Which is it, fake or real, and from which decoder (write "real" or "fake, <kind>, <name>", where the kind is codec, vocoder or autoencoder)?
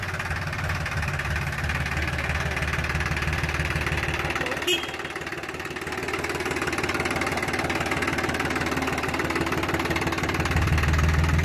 real